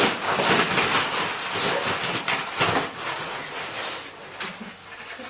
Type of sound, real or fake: real